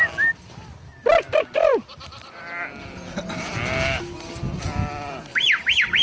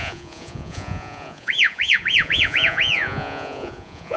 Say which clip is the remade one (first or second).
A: second